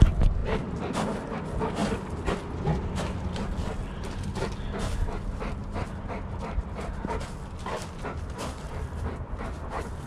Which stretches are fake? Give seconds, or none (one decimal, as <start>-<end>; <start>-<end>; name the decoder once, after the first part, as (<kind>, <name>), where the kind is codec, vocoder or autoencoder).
0.4-1.3 (vocoder, BigVGAN v2); 1.8-3.4; 5.6-10.1